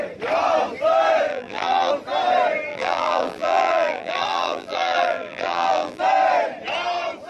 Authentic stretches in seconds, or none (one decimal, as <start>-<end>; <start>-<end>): 0.0-1.3; 1.9-2.7; 6.0-7.3